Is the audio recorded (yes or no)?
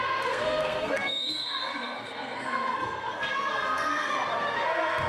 no